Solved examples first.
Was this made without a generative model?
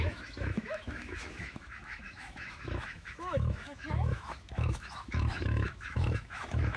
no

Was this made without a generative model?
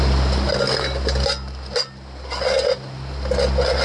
yes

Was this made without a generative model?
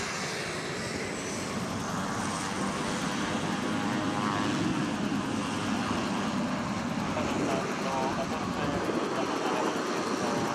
yes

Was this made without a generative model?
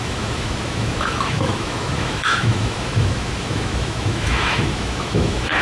no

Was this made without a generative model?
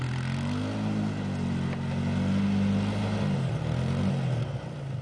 yes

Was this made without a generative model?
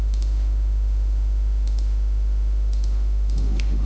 no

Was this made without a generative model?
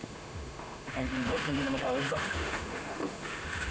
no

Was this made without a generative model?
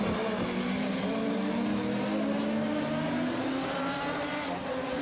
yes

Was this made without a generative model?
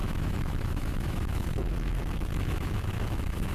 no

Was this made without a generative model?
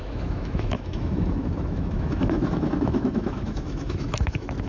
no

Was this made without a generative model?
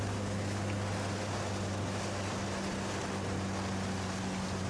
yes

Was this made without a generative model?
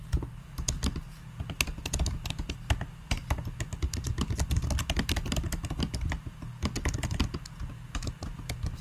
yes